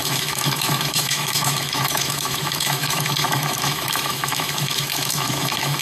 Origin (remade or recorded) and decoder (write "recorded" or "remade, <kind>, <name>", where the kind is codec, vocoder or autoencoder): remade, autoencoder, DAC-VAE